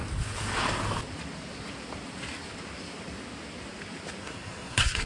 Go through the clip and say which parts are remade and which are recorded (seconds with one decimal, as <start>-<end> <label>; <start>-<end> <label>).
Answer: 0.0-4.2 recorded; 4.2-5.1 remade